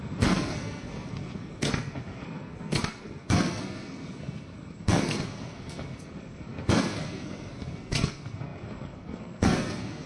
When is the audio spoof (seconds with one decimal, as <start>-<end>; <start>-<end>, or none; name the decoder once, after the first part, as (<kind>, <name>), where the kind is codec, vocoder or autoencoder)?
0.0-10.1 (codec, SNAC)